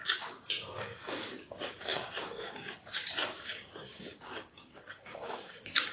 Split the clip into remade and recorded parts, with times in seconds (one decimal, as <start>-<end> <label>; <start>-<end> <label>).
0.0-5.9 remade